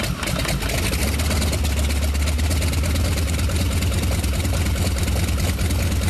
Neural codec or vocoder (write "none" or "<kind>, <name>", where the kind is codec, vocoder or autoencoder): none